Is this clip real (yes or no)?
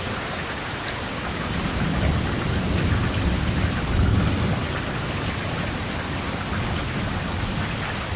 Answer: yes